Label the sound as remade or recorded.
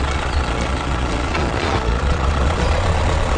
remade